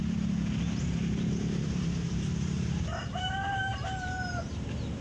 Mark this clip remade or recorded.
remade